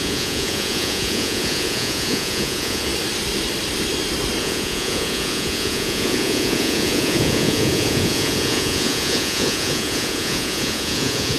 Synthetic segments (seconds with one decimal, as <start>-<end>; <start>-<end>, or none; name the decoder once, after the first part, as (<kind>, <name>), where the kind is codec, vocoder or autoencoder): 0.0-2.9 (vocoder, Vocos); 4.4-11.4